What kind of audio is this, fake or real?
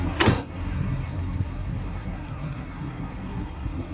fake